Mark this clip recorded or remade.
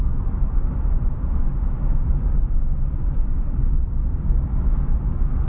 remade